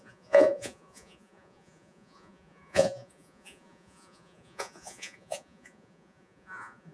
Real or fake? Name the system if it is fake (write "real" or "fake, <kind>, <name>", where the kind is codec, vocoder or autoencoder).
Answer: fake, vocoder, Vocos